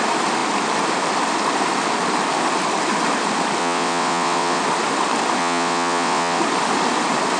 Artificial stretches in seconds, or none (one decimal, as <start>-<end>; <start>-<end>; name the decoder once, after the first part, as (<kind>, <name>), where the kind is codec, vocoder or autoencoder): 3.6-4.6 (vocoder, WaveNeXt); 5.4-6.4